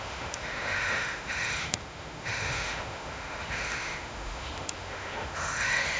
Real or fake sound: fake